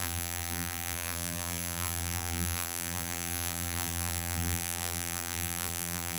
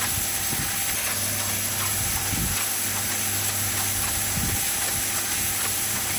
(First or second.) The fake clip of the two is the first